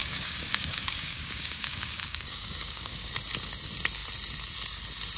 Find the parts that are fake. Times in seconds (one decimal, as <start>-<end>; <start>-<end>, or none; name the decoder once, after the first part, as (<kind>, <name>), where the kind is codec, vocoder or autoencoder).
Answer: 0.0-3.1 (codec, DAC)